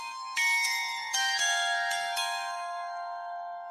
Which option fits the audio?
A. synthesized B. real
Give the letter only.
A